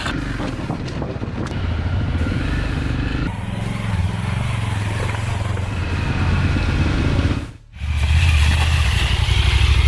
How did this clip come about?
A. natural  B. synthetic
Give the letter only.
A